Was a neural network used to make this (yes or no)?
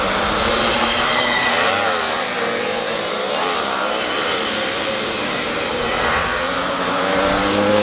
yes